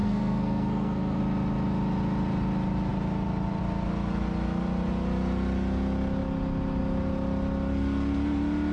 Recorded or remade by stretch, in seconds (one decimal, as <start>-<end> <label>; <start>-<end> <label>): 0.0-1.2 remade; 1.2-8.7 recorded